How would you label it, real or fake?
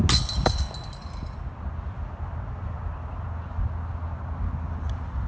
real